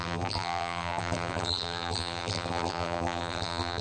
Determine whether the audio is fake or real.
fake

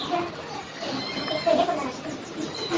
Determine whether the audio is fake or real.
real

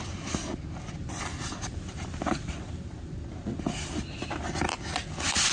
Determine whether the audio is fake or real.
real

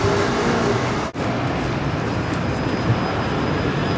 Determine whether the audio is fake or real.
real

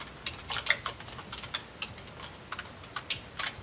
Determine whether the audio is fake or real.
real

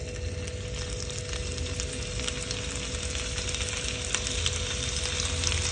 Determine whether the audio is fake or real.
real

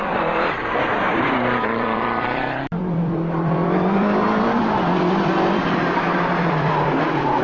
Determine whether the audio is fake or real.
fake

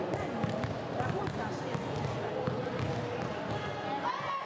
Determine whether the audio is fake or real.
real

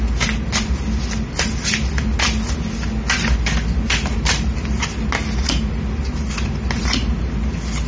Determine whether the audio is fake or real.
real